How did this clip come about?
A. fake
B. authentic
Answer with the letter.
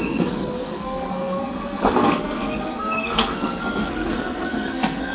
A